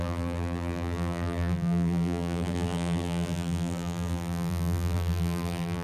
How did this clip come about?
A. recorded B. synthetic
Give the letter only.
B